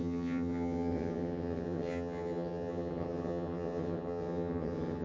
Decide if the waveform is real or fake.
fake